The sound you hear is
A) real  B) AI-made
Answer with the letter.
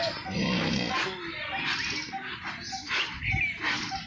A